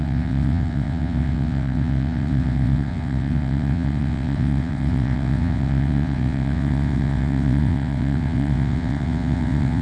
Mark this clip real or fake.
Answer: fake